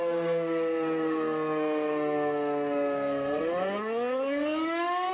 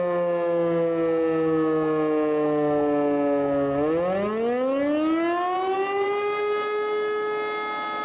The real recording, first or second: second